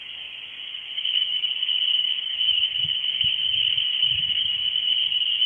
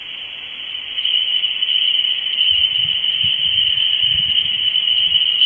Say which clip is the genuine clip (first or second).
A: second